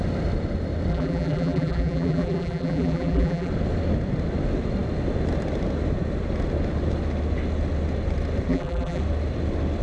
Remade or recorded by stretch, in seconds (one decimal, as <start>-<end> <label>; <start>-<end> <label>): 0.0-0.9 recorded; 0.9-3.5 remade; 3.5-8.5 recorded; 8.5-9.0 remade; 9.0-9.8 recorded